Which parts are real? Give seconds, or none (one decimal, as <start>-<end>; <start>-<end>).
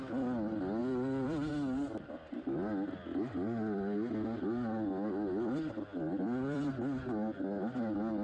0.0-0.8; 1.5-6.0; 6.7-8.2